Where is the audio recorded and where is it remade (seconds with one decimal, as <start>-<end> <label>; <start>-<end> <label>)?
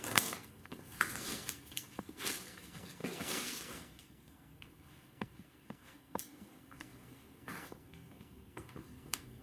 0.0-9.4 remade